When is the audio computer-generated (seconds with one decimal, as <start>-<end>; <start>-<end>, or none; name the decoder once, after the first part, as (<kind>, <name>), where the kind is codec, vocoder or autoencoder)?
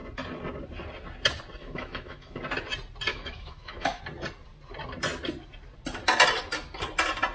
1.6-2.4 (autoencoder, DAC-VAE); 3.1-4.0